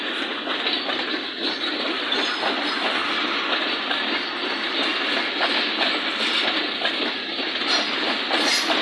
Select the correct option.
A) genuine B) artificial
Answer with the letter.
A